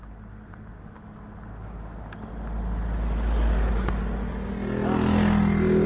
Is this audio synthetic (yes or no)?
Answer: no